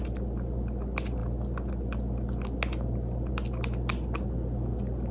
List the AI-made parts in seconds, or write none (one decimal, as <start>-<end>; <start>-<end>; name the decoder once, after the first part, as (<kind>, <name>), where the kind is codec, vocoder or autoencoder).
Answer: none

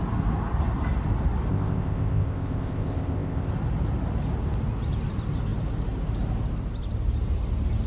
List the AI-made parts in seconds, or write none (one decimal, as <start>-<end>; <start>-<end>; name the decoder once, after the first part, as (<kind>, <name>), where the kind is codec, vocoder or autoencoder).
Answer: 1.5-3.5 (codec, ZipCodec)

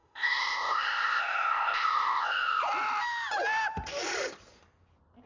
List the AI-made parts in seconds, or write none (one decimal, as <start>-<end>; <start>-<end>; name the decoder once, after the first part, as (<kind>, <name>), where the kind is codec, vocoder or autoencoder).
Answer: 0.0-2.6 (codec, ZipCodec)

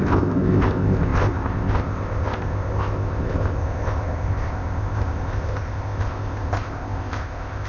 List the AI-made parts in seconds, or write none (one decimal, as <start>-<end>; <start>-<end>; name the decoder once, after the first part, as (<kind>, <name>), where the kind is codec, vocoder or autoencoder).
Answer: 0.0-7.7 (codec, ZipCodec)

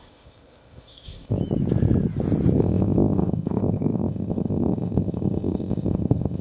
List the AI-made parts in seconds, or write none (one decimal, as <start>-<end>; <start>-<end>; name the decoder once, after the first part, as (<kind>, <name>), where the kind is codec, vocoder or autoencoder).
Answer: 0.0-1.4 (codec, ZipCodec); 2.6-6.4

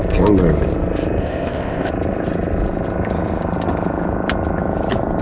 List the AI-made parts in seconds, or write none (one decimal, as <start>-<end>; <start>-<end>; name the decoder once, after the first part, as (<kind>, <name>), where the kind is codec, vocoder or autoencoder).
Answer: 1.2-1.9 (codec, ZipCodec)

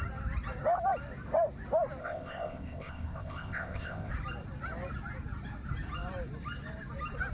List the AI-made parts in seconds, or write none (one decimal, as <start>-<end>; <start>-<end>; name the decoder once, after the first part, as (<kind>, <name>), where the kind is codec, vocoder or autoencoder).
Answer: 2.0-4.1 (codec, ZipCodec)